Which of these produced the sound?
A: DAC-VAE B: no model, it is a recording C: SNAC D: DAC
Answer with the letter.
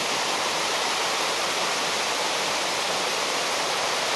B